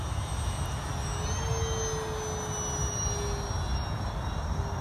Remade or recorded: recorded